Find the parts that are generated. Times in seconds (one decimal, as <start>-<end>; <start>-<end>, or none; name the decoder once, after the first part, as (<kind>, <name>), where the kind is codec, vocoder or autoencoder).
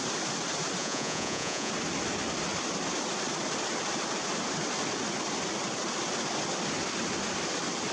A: 0.8-1.7 (vocoder, Vocos)